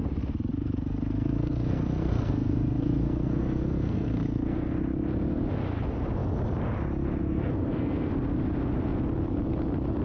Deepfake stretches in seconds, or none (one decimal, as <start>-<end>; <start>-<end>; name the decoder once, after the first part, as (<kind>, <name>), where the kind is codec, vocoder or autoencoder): 0.5-4.7 (codec, SNAC); 7.2-8.1